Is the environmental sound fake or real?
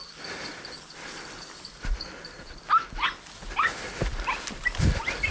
real